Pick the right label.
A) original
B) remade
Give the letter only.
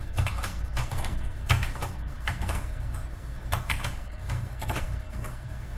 B